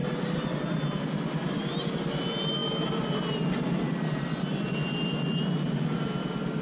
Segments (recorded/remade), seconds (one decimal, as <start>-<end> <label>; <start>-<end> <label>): 0.0-6.6 recorded